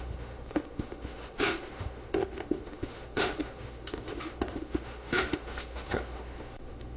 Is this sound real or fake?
fake